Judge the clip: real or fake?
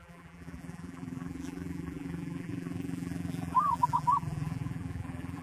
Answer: fake